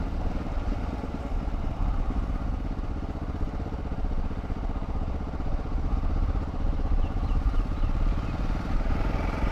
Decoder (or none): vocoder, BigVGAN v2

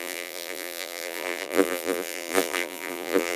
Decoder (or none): vocoder, BigVGAN v2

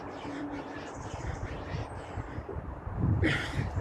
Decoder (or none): vocoder, BigVGAN v2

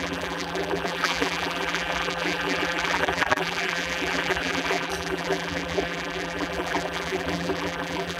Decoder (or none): vocoder, BigVGAN v2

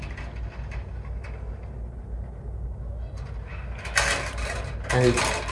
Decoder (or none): none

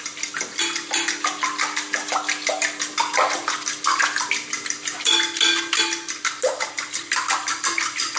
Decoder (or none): none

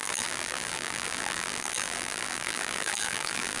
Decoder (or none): vocoder, BigVGAN v2